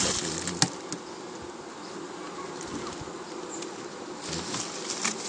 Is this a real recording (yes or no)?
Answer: yes